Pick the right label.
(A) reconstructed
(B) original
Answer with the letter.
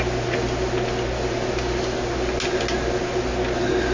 B